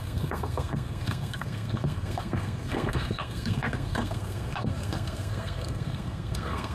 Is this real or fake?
fake